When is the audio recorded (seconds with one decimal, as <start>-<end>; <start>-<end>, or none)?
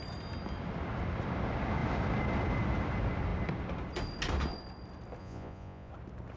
0.0-5.2; 5.9-6.4